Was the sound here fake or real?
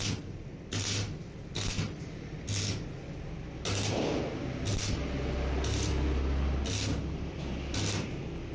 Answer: real